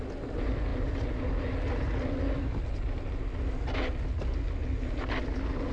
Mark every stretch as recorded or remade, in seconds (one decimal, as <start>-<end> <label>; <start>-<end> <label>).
0.0-5.7 recorded

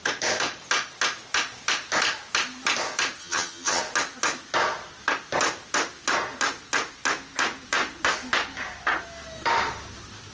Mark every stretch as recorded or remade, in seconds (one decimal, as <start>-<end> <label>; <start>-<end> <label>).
0.0-3.2 recorded; 3.2-3.8 remade; 3.8-10.3 recorded